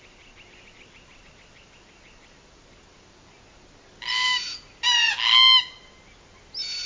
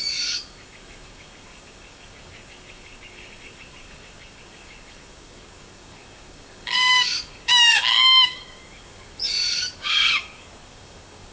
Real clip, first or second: first